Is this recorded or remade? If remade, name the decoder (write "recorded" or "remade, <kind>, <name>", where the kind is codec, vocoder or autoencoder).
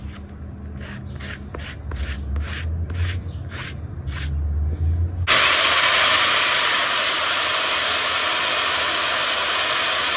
recorded